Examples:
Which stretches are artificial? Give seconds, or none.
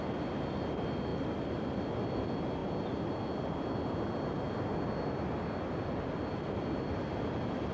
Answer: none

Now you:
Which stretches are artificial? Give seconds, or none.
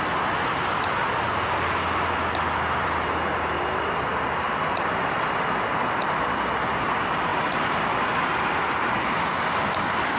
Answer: none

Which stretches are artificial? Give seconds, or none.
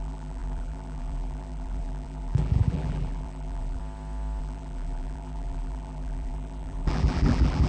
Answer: 0.0-3.8 (vocoder, BigVGAN v2); 4.4-7.7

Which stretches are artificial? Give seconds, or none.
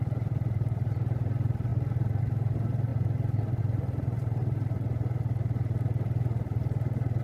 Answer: 0.0-1.7 (vocoder, BigVGAN v2); 2.2-2.9; 3.6-4.4